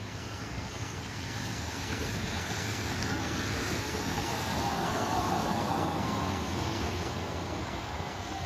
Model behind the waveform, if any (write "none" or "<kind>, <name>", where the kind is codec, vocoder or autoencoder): codec, SNAC